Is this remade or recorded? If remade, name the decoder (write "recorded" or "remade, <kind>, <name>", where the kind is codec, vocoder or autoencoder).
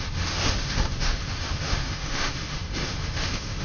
remade, autoencoder, DAC-VAE